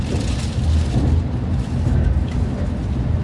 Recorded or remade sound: recorded